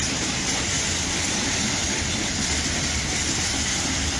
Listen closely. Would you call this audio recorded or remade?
recorded